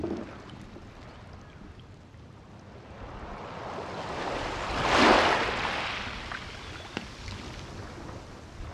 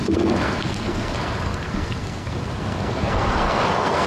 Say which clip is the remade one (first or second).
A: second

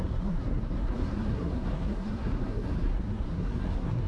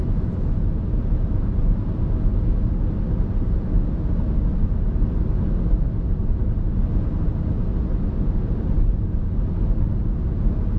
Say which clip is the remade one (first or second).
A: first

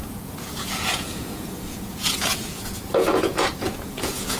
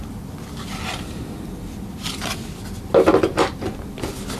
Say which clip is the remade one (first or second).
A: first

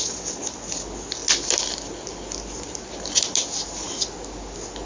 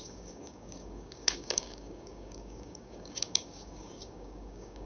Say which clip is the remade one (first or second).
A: second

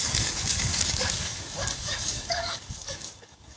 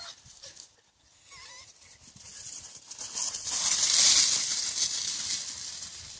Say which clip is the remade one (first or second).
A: first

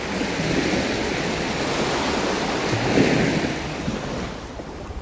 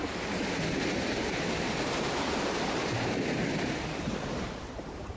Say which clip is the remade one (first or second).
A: second